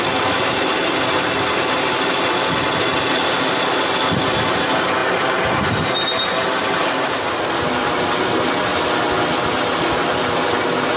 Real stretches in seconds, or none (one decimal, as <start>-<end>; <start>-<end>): 0.0-11.0

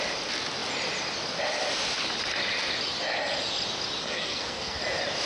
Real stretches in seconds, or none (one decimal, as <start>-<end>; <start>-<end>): 0.0-4.0; 4.8-5.3

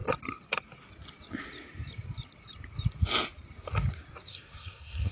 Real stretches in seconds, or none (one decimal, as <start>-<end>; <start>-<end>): 0.0-4.3

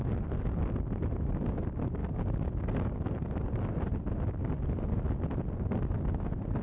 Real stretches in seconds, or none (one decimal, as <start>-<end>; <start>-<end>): 0.0-6.6

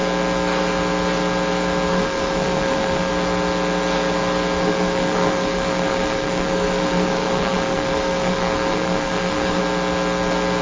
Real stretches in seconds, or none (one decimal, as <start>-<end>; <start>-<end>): 0.0-1.9; 3.1-4.6; 9.6-10.6

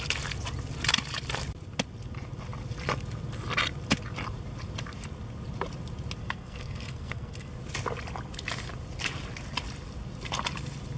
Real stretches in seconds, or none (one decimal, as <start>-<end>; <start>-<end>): 0.0-6.2; 7.5-11.0

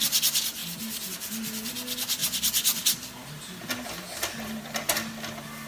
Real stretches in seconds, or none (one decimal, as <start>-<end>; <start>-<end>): 0.0-5.7